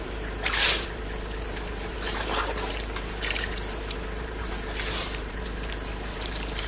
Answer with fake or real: fake